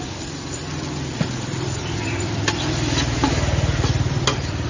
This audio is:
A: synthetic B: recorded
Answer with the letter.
A